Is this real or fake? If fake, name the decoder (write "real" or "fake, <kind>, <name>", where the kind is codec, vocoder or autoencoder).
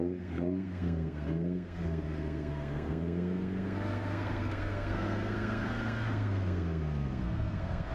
fake, codec, SNAC